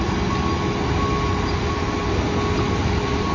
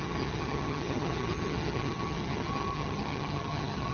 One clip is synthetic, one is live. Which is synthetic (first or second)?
second